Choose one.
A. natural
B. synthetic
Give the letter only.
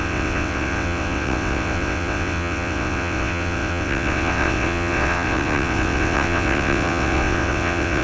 B